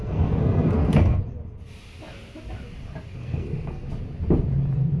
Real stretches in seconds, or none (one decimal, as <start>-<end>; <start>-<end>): 1.2-3.2; 3.9-5.0

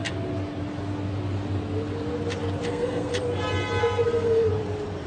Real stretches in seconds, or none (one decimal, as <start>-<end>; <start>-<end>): 0.0-2.7; 3.1-3.8; 4.5-5.1

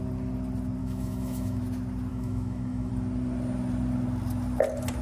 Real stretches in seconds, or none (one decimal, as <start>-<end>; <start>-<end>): 0.0-0.8; 1.6-2.1; 2.9-5.0

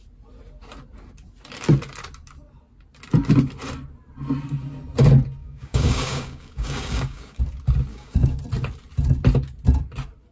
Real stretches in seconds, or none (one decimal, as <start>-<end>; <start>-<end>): 0.0-5.4; 7.4-7.9; 8.4-10.3

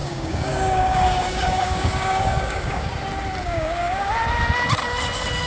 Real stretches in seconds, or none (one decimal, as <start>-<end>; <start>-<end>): 2.9-3.4; 4.1-5.5